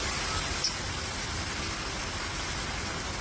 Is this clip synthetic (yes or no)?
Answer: no